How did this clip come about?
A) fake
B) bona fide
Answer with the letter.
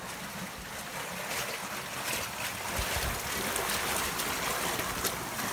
B